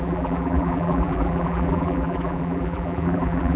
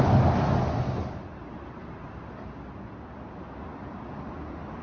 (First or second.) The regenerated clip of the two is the first